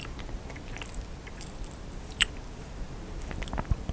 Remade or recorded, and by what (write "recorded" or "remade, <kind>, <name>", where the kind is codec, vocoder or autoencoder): recorded